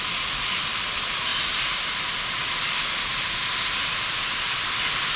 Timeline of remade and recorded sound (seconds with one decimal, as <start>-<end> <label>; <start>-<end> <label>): 0.0-5.2 recorded